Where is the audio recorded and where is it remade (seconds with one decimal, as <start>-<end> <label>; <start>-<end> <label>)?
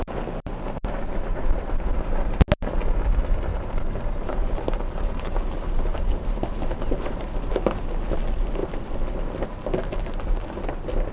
0.0-1.3 recorded; 1.3-2.4 remade; 2.4-3.5 recorded; 3.5-7.5 remade; 7.5-11.1 recorded